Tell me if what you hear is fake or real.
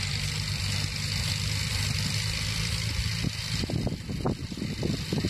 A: real